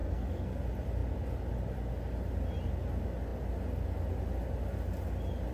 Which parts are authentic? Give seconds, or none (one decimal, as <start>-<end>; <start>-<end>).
0.6-5.5